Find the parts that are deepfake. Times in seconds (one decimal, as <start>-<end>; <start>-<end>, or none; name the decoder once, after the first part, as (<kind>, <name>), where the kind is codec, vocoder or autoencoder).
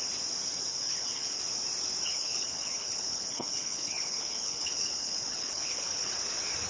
0.7-1.4 (codec, HILCodec); 2.1-6.1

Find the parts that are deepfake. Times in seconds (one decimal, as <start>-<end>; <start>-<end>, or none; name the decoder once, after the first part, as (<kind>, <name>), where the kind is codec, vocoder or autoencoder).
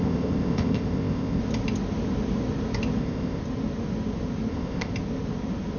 0.0-1.4 (codec, ZipCodec); 3.0-3.4; 4.5-4.9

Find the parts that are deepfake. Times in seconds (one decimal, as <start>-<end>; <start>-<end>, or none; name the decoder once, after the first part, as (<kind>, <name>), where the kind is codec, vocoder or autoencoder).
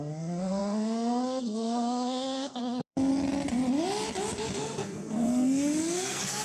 0.0-3.1 (codec, SNAC); 4.4-6.4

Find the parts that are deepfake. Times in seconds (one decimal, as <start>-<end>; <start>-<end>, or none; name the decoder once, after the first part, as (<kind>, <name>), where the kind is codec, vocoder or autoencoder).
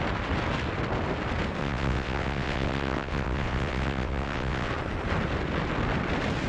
1.6-4.7 (vocoder, WaveNeXt)